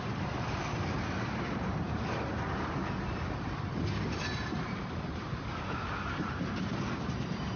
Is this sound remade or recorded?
remade